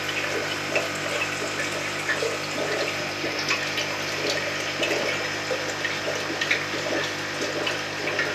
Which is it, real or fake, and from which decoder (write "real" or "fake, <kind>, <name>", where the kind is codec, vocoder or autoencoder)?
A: real